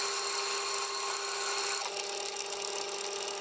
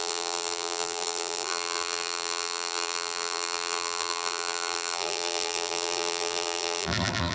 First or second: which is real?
first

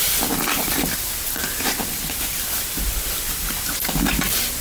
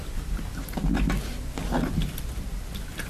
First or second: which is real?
second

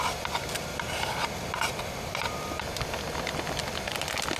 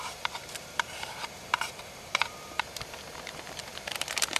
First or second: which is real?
first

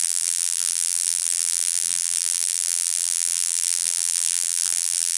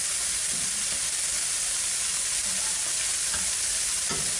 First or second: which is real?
second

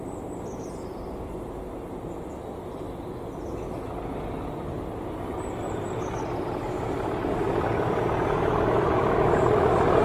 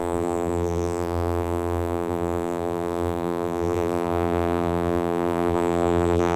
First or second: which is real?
first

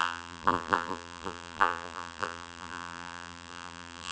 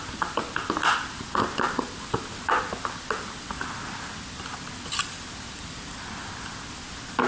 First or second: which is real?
second